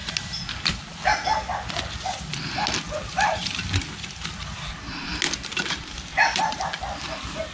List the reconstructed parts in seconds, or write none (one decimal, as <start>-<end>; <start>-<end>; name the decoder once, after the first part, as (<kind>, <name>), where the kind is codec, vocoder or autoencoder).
2.7-5.1 (vocoder, BigVGAN v2); 5.7-7.5